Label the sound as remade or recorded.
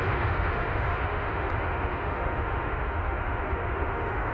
remade